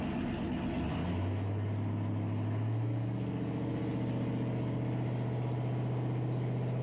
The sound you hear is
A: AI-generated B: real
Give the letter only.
B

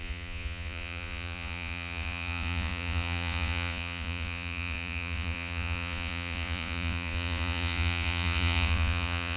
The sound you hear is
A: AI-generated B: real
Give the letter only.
A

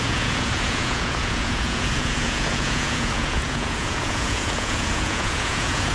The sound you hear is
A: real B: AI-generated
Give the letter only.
B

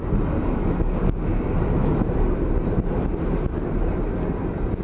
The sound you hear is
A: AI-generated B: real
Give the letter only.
B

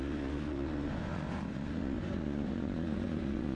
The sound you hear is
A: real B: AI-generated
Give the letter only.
B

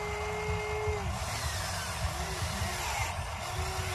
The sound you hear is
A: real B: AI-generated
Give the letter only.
A